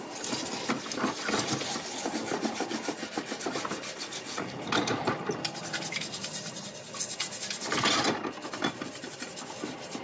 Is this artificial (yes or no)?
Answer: no